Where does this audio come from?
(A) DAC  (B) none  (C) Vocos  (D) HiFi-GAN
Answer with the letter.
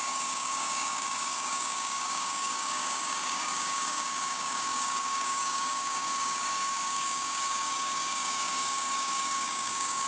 A